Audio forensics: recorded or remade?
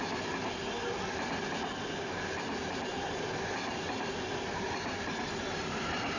recorded